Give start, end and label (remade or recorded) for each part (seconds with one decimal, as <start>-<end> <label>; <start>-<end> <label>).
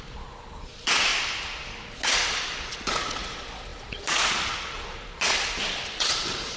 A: 0.0-1.1 remade; 1.1-1.6 recorded; 1.6-6.6 remade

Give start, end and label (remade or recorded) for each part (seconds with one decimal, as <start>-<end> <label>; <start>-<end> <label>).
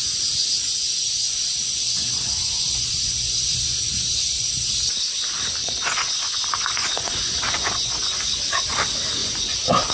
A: 0.0-4.7 remade; 4.7-5.6 recorded; 5.6-8.2 remade; 8.2-9.2 recorded; 9.2-9.9 remade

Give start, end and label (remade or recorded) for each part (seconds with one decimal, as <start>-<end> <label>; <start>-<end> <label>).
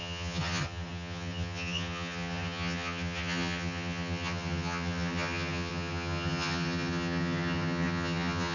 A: 0.0-8.5 remade